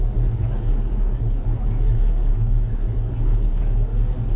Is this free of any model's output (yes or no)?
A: no